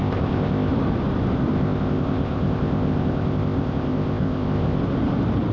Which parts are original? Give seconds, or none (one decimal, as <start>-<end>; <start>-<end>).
0.7-1.5; 4.8-5.5